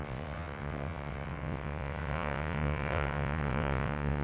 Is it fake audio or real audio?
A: fake